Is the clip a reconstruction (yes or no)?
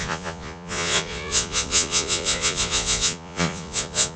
yes